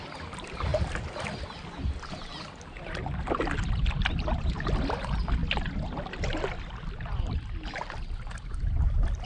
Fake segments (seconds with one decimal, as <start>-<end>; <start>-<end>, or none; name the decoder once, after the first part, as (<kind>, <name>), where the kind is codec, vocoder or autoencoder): none